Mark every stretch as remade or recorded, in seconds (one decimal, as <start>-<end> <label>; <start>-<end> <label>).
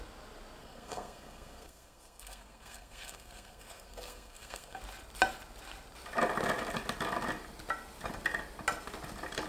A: 0.0-0.6 recorded; 0.6-4.8 remade; 4.8-9.5 recorded